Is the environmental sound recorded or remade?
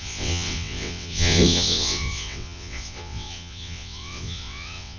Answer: remade